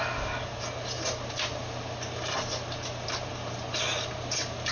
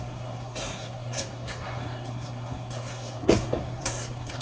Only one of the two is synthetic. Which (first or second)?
second